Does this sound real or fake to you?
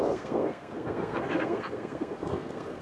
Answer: fake